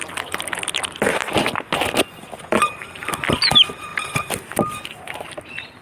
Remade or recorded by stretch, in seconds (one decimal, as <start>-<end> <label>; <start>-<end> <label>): 0.0-3.9 recorded; 3.9-4.5 remade; 4.5-5.8 recorded